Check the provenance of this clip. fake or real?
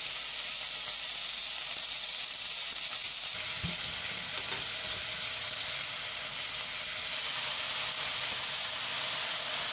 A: real